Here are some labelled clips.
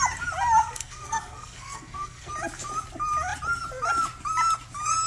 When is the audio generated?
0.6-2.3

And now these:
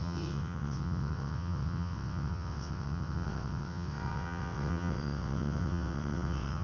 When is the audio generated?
0.0-6.6

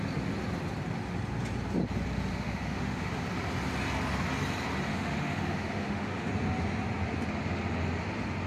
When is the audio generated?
2.3-3.1; 4.9-6.3